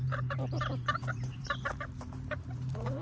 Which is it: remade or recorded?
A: remade